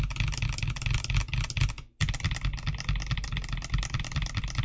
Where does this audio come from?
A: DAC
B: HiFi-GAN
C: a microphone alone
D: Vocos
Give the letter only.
C